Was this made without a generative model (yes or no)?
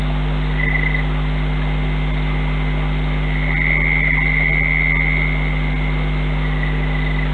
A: yes